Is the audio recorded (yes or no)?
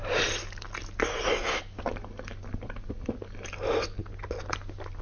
yes